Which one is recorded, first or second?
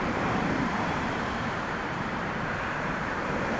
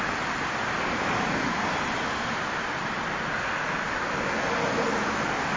second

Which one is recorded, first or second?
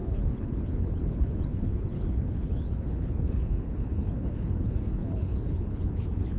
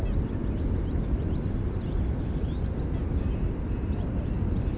second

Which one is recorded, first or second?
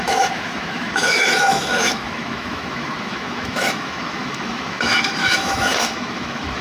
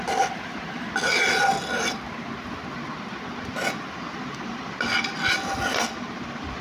second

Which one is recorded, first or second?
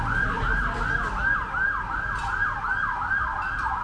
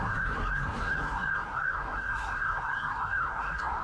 first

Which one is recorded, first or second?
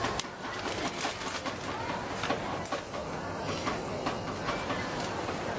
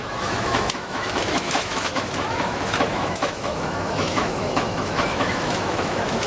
first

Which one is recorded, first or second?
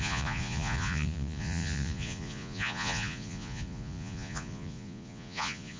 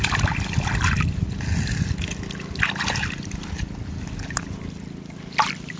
second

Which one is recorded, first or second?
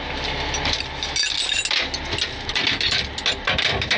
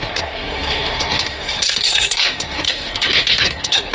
first